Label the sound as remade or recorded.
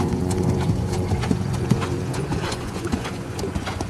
remade